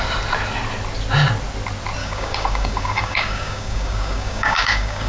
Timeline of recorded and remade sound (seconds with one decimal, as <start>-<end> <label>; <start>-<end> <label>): 0.0-2.0 recorded; 2.0-5.1 remade